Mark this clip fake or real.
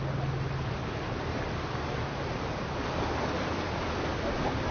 real